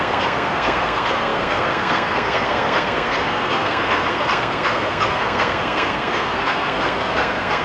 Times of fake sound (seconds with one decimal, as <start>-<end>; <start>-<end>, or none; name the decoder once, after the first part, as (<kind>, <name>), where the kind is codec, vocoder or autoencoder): 0.0-7.6 (codec, SNAC)